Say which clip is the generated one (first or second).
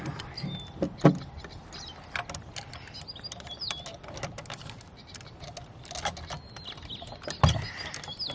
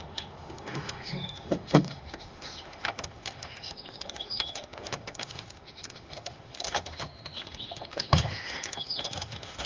second